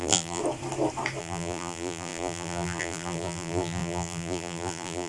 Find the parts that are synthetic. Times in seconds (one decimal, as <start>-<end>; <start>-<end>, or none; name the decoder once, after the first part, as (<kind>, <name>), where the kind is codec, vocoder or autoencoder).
0.0-0.4 (vocoder, BigVGAN v2); 1.2-5.1